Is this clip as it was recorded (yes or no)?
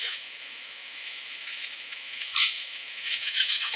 no